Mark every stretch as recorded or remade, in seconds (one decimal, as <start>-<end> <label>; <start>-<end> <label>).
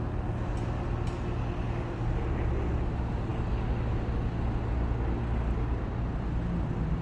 0.0-7.0 recorded